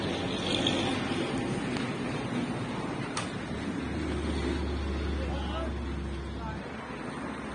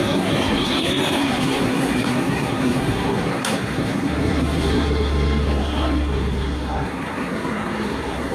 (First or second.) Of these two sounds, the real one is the first